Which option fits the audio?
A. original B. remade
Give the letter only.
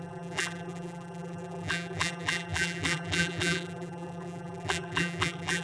B